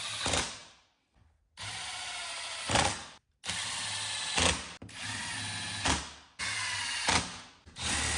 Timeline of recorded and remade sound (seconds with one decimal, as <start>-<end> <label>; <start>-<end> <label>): 0.0-8.2 recorded